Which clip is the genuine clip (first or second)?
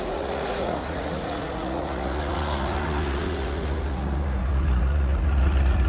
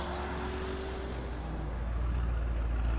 second